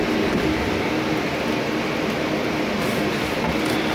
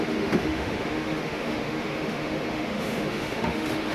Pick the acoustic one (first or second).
first